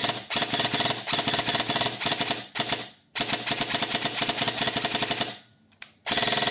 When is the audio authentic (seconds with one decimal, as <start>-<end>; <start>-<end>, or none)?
0.0-6.5